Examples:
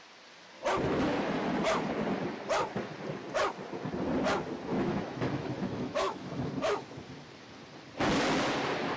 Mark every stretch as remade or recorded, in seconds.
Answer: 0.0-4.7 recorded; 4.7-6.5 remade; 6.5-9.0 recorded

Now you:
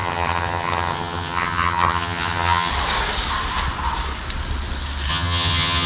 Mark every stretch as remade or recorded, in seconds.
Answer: 0.0-2.7 remade; 2.7-5.1 recorded; 5.1-5.9 remade